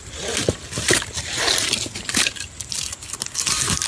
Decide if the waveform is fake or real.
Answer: real